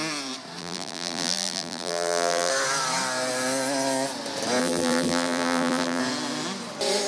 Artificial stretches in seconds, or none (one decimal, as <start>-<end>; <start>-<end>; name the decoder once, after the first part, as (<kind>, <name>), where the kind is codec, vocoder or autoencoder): 0.6-2.5 (vocoder, BigVGAN v2); 4.6-6.0